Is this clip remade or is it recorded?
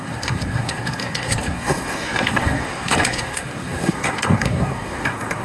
remade